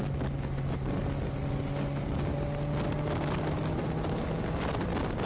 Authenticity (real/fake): real